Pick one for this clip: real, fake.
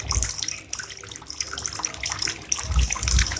real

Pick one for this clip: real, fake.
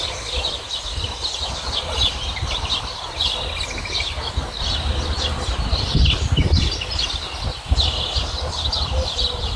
real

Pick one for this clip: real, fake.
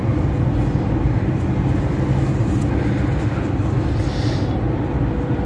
real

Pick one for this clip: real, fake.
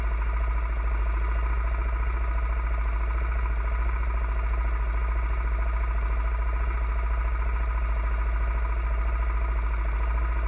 real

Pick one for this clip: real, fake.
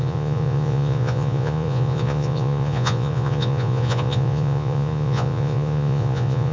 fake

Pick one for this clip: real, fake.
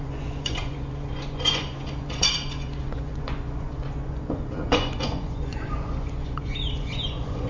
fake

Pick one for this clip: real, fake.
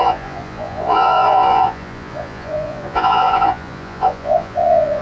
fake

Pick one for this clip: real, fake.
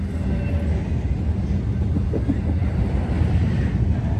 real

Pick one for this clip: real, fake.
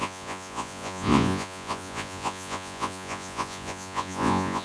fake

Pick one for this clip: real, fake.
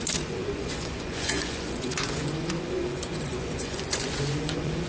fake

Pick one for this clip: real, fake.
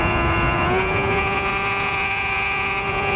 fake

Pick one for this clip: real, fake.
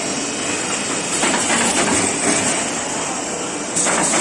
real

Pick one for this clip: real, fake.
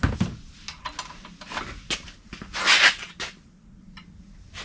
real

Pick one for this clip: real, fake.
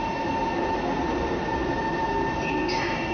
real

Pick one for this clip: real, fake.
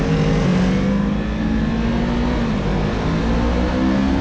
real